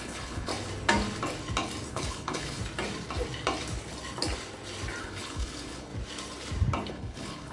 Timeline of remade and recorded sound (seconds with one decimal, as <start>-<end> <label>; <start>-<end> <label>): 0.0-0.5 remade; 0.5-1.9 recorded; 1.9-2.6 remade; 2.6-5.0 recorded; 5.0-5.9 remade; 5.9-6.9 recorded; 6.9-7.5 remade